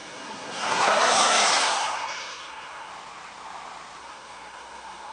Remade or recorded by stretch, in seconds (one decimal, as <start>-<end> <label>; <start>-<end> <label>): 0.0-2.9 remade; 2.9-4.0 recorded; 4.0-5.1 remade